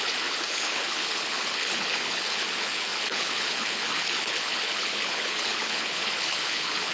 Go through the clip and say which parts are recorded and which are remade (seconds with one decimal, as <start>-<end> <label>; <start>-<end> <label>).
0.0-6.9 remade